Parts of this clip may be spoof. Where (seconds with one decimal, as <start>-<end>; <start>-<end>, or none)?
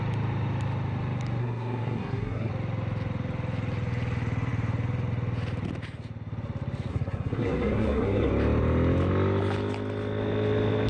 1.4-2.5; 6.9-8.3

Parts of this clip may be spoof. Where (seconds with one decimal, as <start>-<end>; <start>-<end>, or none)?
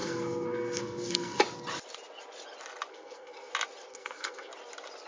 0.0-1.4; 2.9-3.5; 3.9-4.5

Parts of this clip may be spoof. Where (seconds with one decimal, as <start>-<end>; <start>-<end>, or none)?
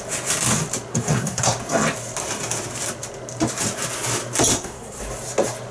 0.9-1.5; 4.5-5.0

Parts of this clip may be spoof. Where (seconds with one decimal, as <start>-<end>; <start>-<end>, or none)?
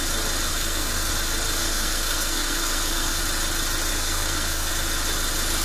0.5-1.1; 1.6-3.2; 3.9-4.7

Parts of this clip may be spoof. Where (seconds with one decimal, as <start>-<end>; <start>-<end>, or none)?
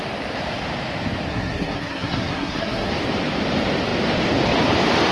1.3-2.9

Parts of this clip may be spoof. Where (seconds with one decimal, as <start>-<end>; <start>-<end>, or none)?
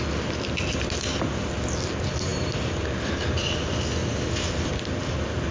none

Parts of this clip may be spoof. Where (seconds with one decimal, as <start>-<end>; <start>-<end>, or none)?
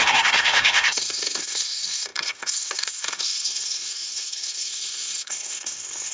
0.0-6.1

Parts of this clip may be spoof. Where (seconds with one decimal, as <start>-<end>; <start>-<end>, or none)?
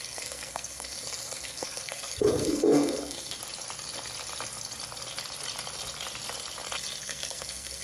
0.0-3.4; 7.0-7.8